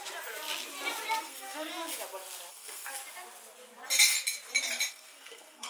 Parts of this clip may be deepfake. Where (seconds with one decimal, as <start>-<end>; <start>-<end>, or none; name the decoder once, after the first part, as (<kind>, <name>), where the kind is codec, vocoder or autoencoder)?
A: 1.2-1.7 (codec, SNAC); 2.5-3.0; 4.9-5.7